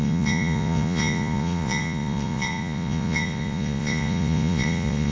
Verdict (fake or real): fake